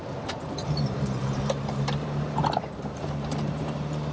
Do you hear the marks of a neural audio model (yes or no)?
yes